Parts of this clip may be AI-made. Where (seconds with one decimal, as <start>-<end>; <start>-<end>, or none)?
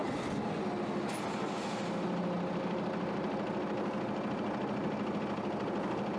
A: none